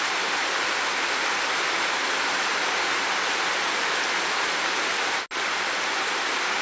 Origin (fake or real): real